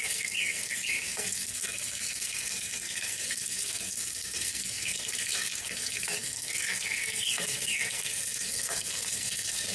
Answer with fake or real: fake